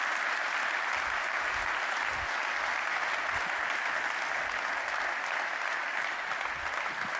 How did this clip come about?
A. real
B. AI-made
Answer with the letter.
A